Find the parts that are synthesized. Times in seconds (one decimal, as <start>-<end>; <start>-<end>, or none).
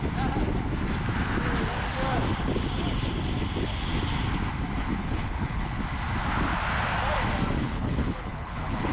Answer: 4.8-5.8; 7.6-8.9